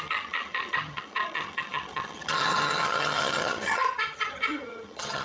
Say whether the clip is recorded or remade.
remade